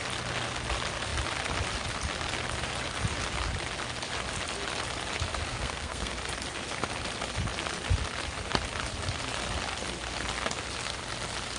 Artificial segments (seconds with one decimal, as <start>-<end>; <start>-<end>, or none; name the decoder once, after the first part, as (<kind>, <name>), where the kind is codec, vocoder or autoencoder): 5.5-6.1 (codec, SNAC)